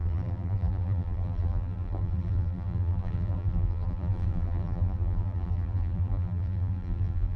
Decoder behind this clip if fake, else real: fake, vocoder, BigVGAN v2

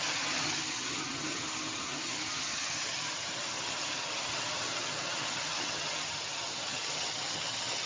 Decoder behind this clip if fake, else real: fake, vocoder, HiFi-GAN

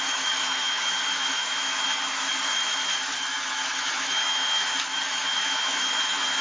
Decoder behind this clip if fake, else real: fake, autoencoder, DAC-VAE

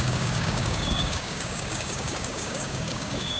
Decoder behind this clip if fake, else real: fake, codec, DAC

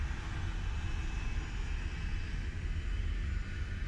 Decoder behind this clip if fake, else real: real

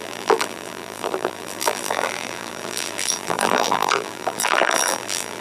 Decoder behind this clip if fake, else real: fake, vocoder, BigVGAN v2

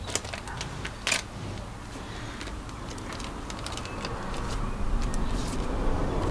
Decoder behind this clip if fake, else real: real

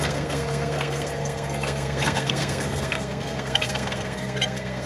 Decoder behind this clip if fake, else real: fake, codec, SNAC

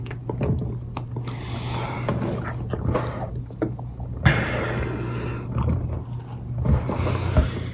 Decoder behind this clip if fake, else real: real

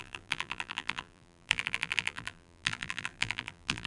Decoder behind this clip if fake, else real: fake, vocoder, BigVGAN v2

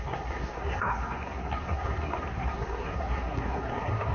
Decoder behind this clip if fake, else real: fake, codec, SNAC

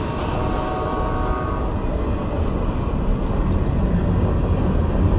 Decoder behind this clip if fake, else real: real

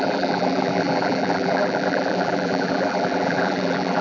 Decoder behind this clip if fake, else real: fake, vocoder, BigVGAN v2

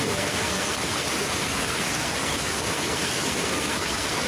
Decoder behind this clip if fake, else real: fake, codec, SNAC